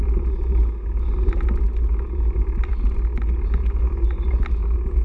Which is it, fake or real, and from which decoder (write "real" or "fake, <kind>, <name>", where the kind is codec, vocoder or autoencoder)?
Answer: real